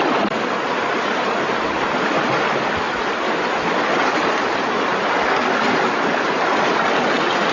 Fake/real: real